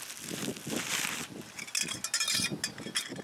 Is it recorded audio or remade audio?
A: recorded